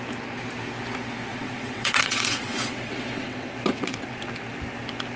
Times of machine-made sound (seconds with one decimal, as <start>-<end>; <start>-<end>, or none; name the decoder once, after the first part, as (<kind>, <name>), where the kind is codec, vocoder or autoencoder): 1.3-4.2 (vocoder, WaveNeXt)